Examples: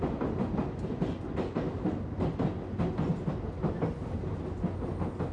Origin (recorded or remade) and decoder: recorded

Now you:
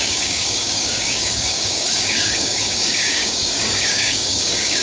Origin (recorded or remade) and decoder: remade, codec, DAC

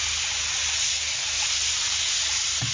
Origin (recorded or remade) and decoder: recorded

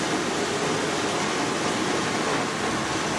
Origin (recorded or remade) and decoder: recorded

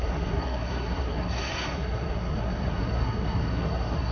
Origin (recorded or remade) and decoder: remade, codec, SNAC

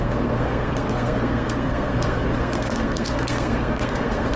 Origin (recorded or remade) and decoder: remade, codec, SNAC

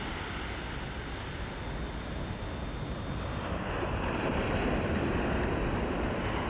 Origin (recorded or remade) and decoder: recorded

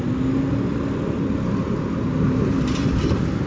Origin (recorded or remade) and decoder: recorded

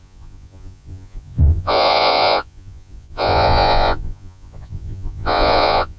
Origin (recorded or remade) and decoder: remade, vocoder, Vocos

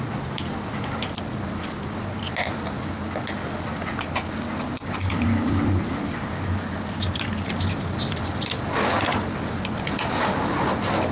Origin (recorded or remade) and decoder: recorded